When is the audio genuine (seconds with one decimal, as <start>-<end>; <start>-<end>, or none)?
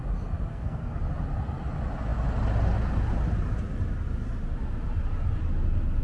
0.0-0.5; 1.0-6.0